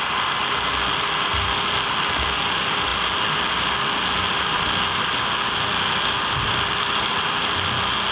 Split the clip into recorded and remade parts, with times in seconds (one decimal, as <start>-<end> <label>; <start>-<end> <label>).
0.0-8.1 recorded